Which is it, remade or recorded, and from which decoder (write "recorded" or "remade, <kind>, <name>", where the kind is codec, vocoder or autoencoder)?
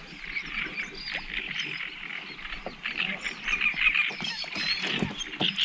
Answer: recorded